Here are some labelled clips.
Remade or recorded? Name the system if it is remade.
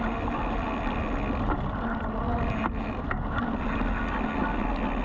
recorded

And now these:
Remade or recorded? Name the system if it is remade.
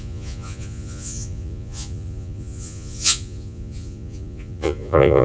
remade, vocoder, Vocos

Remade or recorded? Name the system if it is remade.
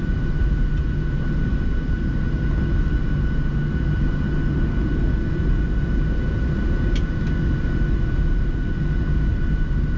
recorded